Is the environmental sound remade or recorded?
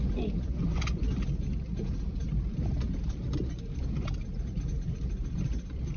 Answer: recorded